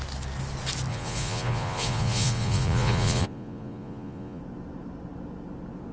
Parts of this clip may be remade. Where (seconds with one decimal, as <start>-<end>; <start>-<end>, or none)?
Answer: 0.9-4.4